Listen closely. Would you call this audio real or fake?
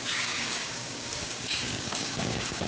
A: fake